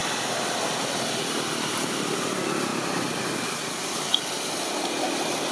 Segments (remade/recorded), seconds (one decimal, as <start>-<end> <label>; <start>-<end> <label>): 0.0-5.5 remade